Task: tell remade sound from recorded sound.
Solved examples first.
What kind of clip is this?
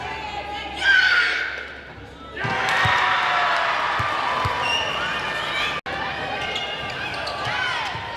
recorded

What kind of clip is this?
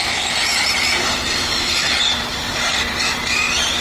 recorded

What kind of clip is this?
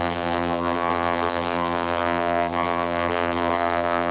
remade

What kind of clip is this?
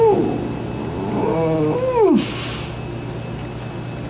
recorded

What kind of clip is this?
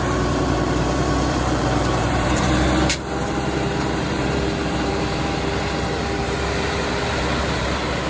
remade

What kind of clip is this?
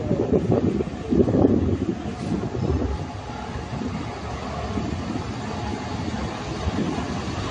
recorded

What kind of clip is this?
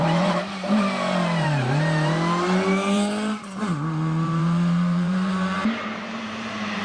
remade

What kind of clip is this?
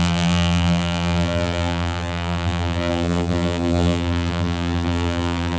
remade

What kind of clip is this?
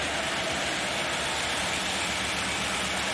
remade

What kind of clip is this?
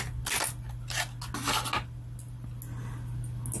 recorded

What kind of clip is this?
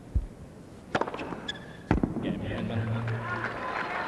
recorded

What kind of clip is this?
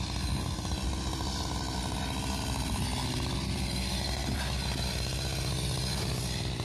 recorded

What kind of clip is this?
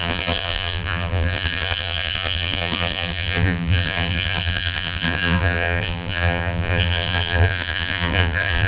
remade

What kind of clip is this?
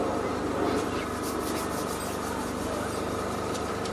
recorded